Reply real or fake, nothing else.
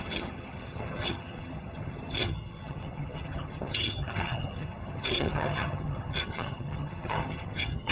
fake